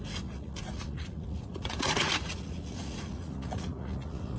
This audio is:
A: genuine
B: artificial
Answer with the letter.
B